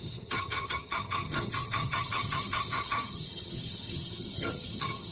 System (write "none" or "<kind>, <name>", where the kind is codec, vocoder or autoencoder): vocoder, HiFi-GAN